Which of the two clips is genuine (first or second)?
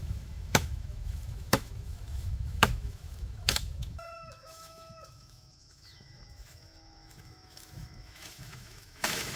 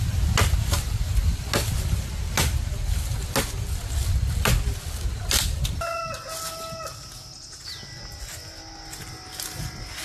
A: second